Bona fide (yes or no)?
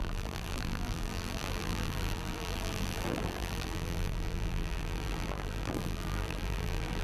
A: no